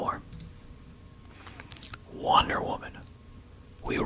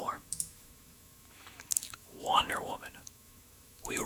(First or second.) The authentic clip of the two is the first